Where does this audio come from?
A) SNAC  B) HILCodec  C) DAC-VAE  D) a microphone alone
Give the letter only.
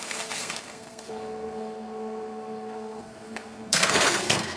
A